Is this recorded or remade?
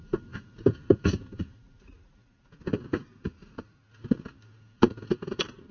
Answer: recorded